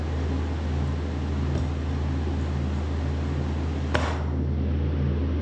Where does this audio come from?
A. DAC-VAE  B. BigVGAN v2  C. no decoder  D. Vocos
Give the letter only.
C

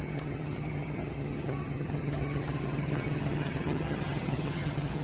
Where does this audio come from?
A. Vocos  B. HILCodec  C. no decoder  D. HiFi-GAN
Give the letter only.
D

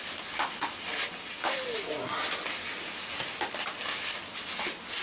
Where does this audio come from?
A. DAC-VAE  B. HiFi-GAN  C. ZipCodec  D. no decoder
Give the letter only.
D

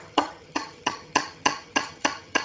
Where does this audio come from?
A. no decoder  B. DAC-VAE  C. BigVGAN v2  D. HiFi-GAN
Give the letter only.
D